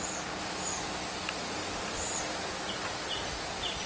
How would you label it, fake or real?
real